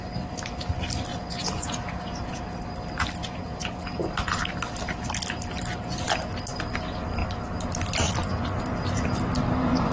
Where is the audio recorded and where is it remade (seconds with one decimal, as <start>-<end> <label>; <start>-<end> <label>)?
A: 0.0-1.1 recorded; 1.1-2.6 remade; 2.6-3.2 recorded; 3.2-4.1 remade; 4.1-9.9 recorded